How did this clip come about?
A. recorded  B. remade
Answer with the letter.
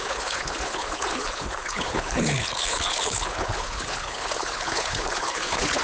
B